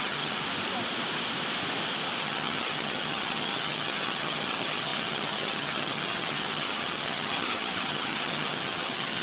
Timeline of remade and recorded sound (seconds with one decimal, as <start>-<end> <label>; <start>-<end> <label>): 0.0-0.4 remade; 0.4-2.2 recorded; 2.2-9.2 remade